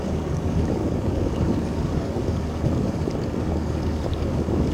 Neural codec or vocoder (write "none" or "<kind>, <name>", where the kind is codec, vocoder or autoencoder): codec, DAC